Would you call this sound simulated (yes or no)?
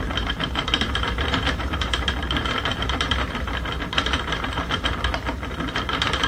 yes